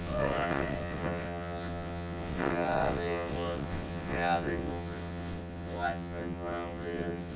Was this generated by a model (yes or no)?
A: yes